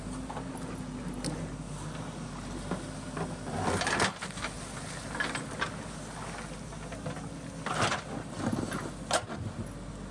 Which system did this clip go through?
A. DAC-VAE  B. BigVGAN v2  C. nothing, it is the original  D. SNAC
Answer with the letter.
C